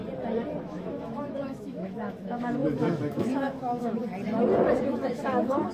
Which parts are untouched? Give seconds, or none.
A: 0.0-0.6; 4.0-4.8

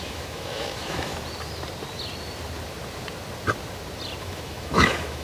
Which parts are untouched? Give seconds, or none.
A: 1.1-4.2

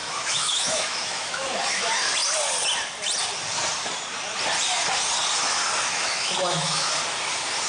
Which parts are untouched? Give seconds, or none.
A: 1.8-5.9; 6.9-7.7

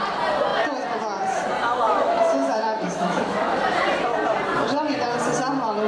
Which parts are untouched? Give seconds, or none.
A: 0.0-1.9; 3.6-5.9